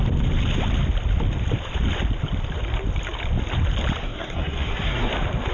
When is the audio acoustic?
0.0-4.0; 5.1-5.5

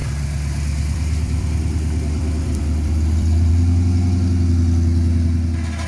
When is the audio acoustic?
3.5-5.9

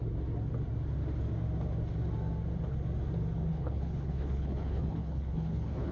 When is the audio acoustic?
0.0-3.5

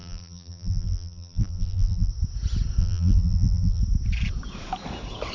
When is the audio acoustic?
2.1-2.8; 3.8-5.3

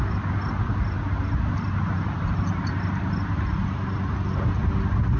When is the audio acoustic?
0.0-5.2

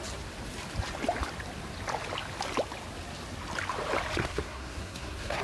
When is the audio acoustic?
0.0-4.2

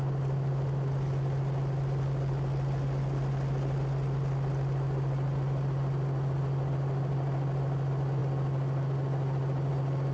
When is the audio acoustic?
0.0-10.1

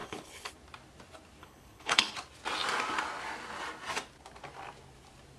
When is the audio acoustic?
0.5-1.4; 2.1-5.4